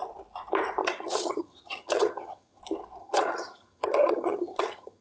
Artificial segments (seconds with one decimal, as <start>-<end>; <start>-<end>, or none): 0.8-2.6; 3.0-5.0